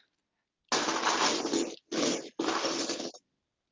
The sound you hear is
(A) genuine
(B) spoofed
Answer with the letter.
A